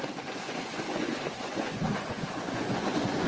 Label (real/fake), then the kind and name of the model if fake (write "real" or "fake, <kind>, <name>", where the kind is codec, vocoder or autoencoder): fake, vocoder, Vocos